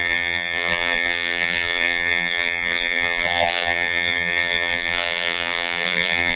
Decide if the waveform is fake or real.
fake